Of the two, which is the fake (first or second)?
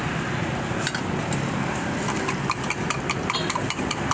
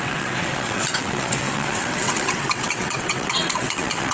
second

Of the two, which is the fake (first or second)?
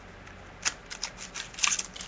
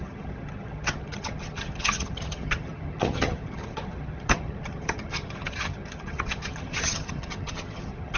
second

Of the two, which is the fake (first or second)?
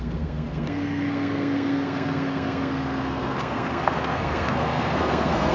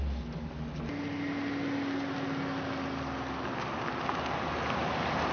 first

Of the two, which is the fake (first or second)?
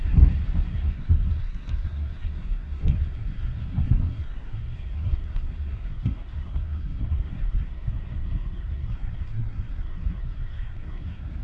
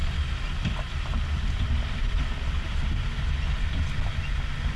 first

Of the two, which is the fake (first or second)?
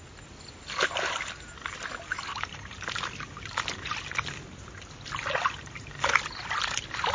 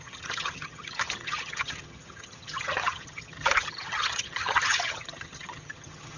second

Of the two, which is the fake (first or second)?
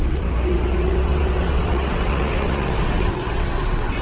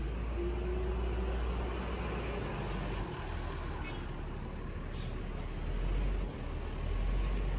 first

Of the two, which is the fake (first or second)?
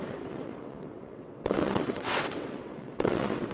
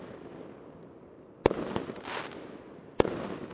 first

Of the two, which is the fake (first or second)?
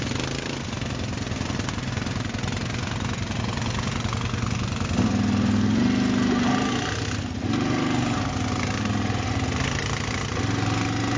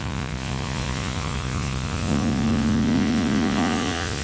second